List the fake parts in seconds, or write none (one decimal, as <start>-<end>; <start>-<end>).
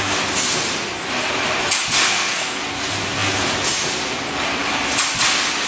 2.0-2.6